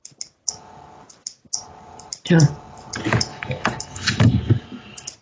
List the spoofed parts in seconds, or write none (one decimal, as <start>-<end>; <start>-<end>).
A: 3.3-4.4